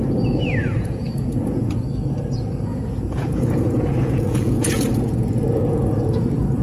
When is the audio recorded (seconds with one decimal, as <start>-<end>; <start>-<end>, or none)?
0.0-0.6; 1.8-2.7